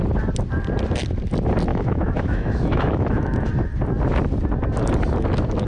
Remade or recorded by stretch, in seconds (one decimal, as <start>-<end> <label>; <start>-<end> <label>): 0.0-1.7 recorded; 1.7-3.5 remade; 3.5-5.7 recorded